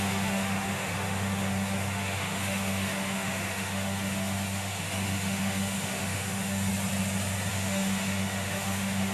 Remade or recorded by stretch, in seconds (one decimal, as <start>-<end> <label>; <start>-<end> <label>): 0.0-6.7 remade; 6.7-7.5 recorded; 7.5-9.1 remade